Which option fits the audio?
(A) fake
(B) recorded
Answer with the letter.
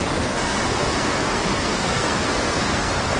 A